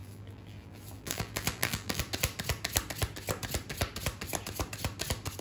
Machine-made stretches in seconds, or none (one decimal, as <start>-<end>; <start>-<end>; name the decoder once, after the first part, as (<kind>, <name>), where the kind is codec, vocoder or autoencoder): 0.0-2.0 (vocoder, BigVGAN v2)